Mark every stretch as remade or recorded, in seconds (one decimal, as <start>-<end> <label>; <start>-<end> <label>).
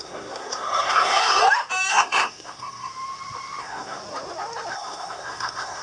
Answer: 0.0-1.4 remade; 1.4-1.9 recorded; 1.9-2.9 remade; 2.9-3.6 recorded; 3.6-4.0 remade; 4.0-4.7 recorded; 4.7-5.8 remade